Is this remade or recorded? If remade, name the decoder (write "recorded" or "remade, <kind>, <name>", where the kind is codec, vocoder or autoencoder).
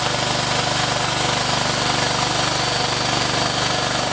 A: recorded